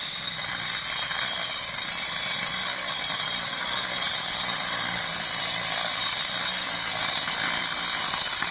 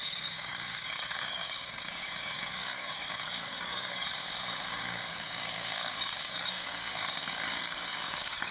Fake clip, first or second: second